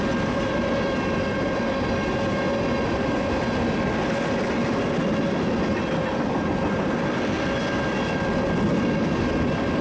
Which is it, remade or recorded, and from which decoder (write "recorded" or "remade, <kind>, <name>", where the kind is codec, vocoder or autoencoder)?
recorded